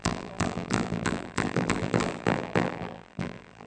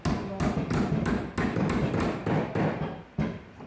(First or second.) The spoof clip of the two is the first